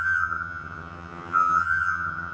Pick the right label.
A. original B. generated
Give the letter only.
B